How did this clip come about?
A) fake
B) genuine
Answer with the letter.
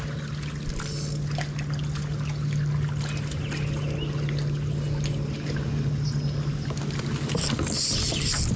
B